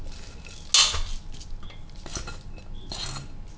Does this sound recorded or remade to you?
recorded